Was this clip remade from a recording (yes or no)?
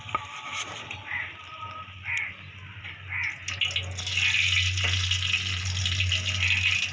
no